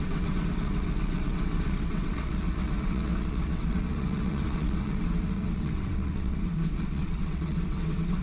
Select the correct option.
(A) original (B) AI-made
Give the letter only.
B